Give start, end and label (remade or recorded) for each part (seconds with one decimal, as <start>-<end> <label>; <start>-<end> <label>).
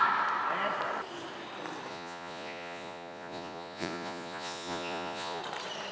0.0-1.9 recorded; 1.9-5.4 remade; 5.4-5.9 recorded